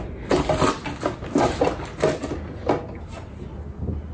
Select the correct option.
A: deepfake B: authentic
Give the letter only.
B